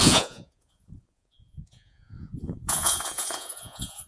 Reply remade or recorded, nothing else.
remade